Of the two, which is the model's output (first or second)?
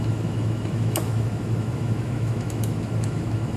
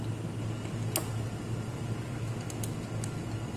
first